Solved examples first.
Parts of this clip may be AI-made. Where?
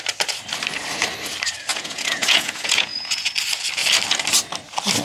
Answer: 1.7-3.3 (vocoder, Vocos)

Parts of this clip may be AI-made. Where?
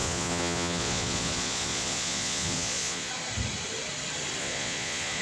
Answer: 0.0-3.1 (vocoder, Vocos); 4.4-5.2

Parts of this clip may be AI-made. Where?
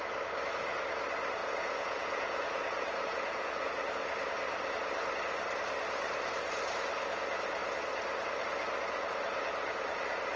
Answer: 1.4-3.7 (vocoder, Vocos)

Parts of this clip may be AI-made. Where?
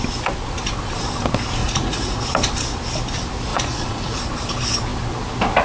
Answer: 1.6-2.2 (vocoder, Vocos); 3.5-4.2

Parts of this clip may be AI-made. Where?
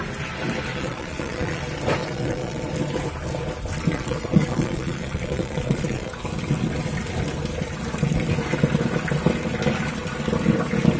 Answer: 0.7-1.6 (vocoder, Vocos); 2.0-2.6; 3.9-6.2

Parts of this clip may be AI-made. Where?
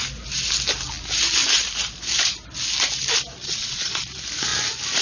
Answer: 3.4-4.0 (vocoder, Vocos)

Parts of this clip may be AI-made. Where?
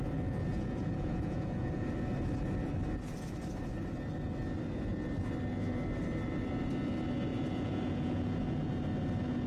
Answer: 0.4-1.9 (vocoder, Vocos); 7.3-8.7